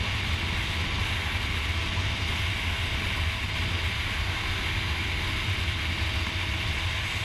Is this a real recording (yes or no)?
yes